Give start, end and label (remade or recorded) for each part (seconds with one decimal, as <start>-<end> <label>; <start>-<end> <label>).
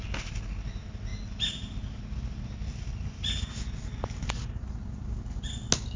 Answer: 0.0-6.0 recorded